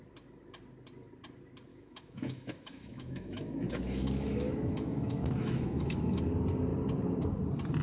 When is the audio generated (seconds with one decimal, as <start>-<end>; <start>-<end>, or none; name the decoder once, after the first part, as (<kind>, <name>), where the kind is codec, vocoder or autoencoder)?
1.7-6.2 (autoencoder, DAC-VAE)